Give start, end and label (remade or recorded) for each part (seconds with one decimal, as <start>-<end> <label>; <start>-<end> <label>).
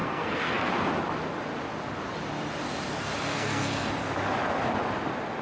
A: 0.0-0.7 remade; 0.7-3.3 recorded; 3.3-3.9 remade; 3.9-5.4 recorded